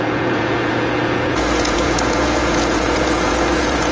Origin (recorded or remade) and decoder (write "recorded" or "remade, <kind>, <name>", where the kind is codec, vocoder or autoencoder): remade, vocoder, Vocos